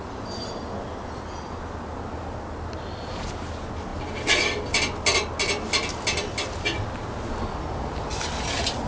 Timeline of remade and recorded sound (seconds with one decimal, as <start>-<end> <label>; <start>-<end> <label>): 0.0-8.9 recorded